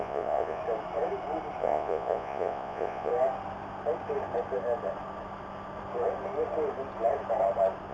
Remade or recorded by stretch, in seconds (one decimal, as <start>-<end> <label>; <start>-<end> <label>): 0.0-0.6 remade; 0.6-1.6 recorded; 1.6-3.1 remade; 3.1-7.9 recorded